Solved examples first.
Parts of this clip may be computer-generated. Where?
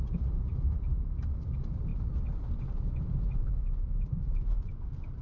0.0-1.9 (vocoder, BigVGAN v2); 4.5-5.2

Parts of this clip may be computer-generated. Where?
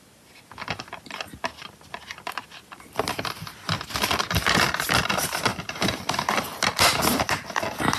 5.5-6.6 (vocoder, BigVGAN v2)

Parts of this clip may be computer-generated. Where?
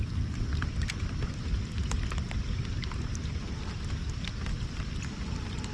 0.0-0.7 (vocoder, BigVGAN v2)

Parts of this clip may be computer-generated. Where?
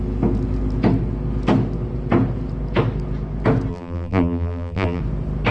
3.7-5.0 (vocoder, BigVGAN v2)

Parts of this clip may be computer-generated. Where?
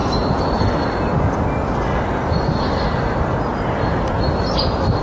0.0-0.6 (vocoder, BigVGAN v2); 3.5-5.0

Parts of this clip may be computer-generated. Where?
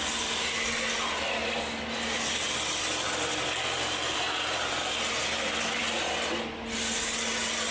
none